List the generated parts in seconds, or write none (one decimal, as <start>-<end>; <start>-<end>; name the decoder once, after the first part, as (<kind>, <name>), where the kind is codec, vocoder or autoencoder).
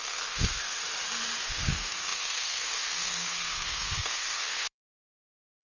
0.0-0.8 (codec, SNAC); 1.4-5.6